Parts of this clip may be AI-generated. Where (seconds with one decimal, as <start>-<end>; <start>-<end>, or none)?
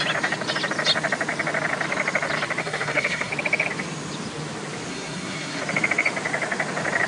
2.6-3.3; 4.9-5.6